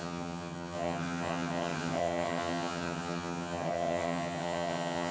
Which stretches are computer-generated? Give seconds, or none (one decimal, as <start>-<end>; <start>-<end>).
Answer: 0.0-5.1

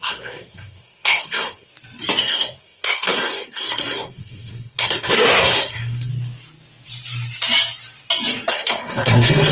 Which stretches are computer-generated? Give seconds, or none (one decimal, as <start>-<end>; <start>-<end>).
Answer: 0.0-1.7; 2.2-6.1; 8.5-9.5

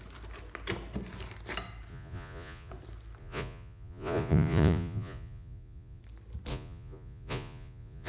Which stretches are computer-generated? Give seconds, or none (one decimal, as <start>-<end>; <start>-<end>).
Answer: 1.9-2.7; 3.2-6.0; 6.5-8.1

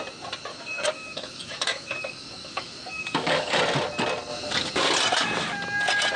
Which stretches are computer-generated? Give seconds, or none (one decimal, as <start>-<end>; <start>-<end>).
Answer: 0.5-3.6

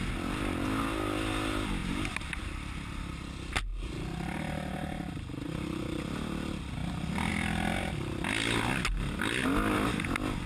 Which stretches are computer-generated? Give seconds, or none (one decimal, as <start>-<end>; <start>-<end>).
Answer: 1.8-2.7; 6.8-7.3

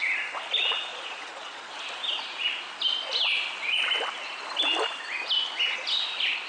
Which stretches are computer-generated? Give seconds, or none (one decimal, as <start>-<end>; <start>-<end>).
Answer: 0.9-1.7

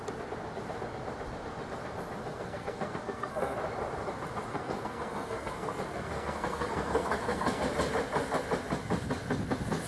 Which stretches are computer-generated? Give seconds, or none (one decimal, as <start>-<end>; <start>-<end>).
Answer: 2.2-3.6; 4.5-7.6